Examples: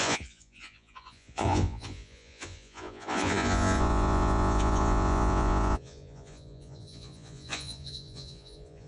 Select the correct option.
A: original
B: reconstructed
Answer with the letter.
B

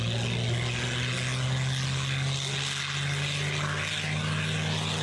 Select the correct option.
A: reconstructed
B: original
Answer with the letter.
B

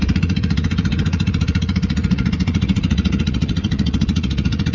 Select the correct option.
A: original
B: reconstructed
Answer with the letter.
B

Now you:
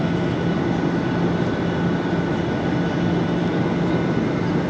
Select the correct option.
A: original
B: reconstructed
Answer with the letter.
A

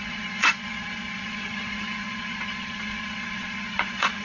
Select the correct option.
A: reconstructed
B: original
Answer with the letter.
A